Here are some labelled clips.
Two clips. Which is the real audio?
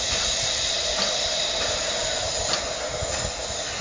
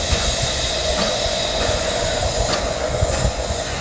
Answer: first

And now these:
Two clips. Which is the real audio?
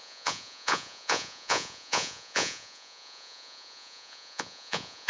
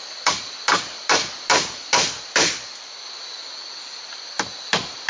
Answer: second